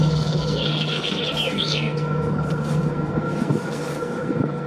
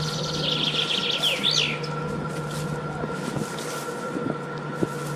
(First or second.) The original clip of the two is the second